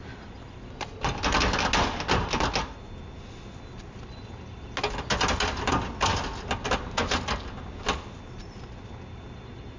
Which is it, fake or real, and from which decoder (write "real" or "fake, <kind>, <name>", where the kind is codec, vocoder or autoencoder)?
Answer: real